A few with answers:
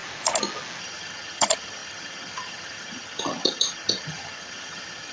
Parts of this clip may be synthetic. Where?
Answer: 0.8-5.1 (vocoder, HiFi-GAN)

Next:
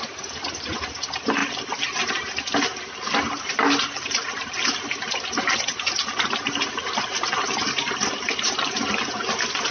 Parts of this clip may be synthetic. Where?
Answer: none